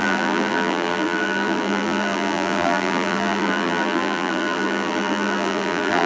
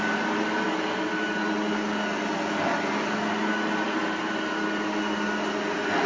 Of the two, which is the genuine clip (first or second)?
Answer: second